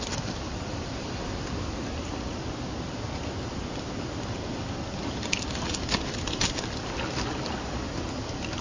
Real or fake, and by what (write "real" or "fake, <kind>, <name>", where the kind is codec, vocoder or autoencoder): real